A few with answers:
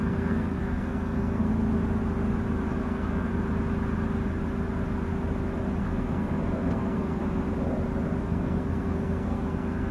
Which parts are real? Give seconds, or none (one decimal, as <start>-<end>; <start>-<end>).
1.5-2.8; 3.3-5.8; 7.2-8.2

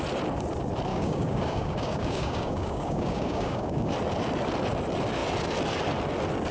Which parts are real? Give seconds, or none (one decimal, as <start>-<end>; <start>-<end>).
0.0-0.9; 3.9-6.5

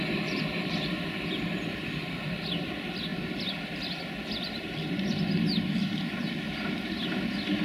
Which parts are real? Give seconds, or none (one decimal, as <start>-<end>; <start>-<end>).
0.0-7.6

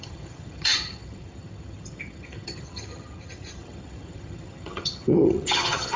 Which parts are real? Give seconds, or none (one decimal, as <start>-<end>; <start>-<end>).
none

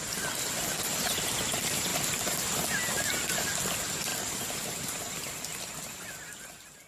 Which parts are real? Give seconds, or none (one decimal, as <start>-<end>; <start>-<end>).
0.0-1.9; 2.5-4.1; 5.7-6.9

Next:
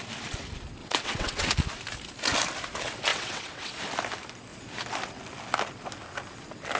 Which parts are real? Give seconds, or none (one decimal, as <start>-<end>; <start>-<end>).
0.0-0.8; 1.5-3.1; 3.8-6.8

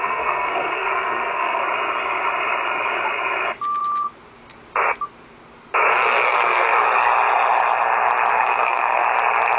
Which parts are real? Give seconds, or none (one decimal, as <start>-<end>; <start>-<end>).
1.6-5.9; 6.7-8.3; 9.0-9.6

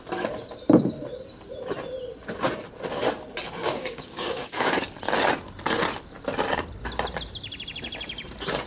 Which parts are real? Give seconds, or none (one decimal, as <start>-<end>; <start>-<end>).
0.0-3.6; 4.8-8.7